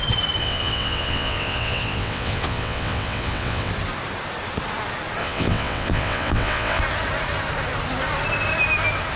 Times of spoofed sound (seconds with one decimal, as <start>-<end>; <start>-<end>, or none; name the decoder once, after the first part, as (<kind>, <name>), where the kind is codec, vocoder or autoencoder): 0.4-3.7 (vocoder, WaveNeXt); 5.2-6.8